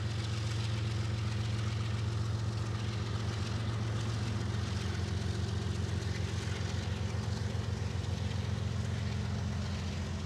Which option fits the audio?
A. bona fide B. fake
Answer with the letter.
A